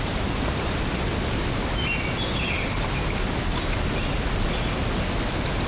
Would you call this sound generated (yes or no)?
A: no